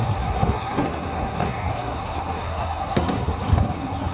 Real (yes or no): no